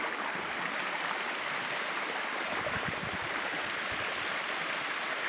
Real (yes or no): yes